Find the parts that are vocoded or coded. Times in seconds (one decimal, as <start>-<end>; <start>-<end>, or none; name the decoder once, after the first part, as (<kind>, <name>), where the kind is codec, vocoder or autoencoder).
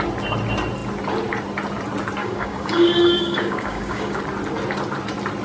2.2-4.2 (codec, DAC)